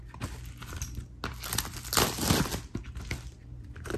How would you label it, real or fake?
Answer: real